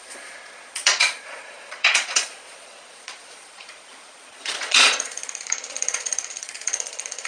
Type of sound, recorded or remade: remade